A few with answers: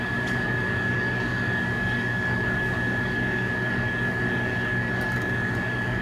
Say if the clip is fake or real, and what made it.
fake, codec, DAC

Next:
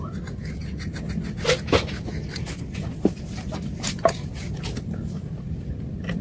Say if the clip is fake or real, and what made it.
real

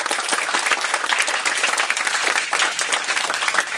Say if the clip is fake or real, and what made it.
real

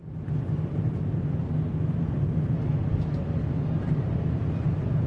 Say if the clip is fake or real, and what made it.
real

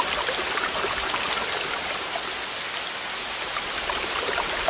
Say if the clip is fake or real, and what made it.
real